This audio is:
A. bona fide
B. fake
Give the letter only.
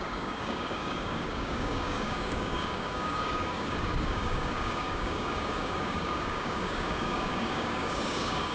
B